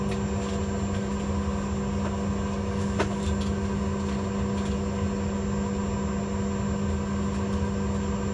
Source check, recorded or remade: recorded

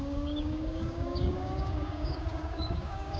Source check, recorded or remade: remade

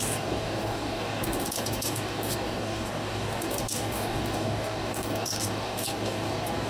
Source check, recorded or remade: remade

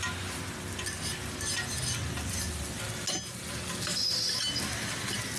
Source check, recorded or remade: recorded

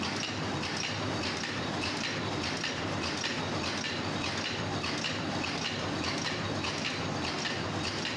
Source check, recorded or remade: recorded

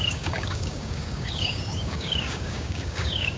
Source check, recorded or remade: remade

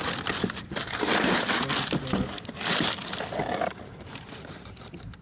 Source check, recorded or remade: recorded